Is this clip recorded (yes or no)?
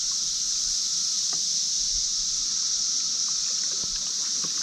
yes